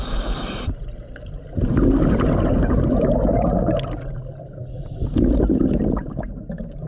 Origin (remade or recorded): recorded